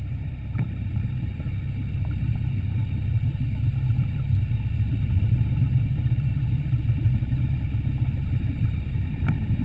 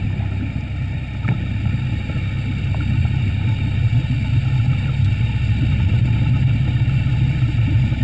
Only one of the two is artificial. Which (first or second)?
first